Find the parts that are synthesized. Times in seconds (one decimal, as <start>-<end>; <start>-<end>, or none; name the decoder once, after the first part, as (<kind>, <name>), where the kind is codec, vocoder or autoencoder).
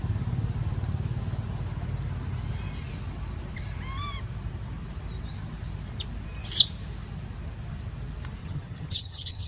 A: 8.4-9.5 (vocoder, HiFi-GAN)